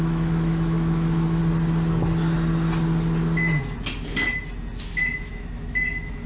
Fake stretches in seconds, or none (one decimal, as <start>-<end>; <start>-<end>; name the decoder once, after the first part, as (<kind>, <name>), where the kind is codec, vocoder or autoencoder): 0.0-1.4 (autoencoder, DAC-VAE); 5.0-6.3